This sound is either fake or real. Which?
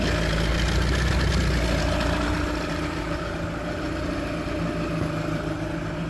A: real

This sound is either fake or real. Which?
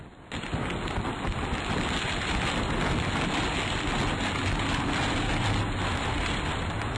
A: real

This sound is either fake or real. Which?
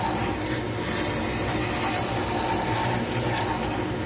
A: real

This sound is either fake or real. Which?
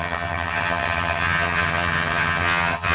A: fake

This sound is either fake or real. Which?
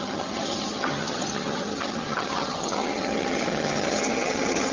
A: fake